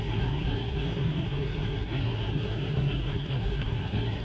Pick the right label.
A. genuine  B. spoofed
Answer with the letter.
B